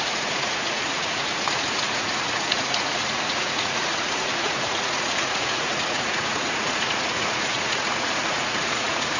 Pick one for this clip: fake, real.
fake